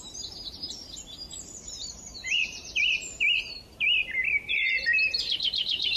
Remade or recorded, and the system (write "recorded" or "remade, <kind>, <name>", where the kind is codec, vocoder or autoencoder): remade, vocoder, BigVGAN v2